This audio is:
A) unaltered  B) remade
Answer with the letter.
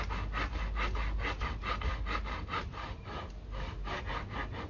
A